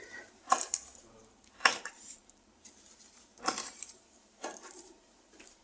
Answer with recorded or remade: remade